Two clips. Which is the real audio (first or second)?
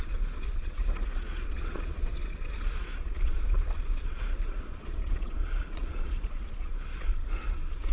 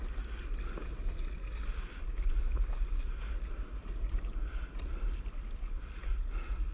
second